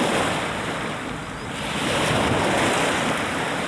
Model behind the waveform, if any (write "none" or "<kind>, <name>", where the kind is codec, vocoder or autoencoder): none